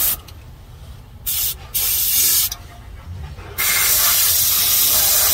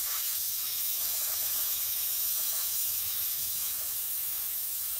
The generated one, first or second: second